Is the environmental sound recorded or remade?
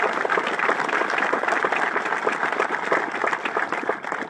recorded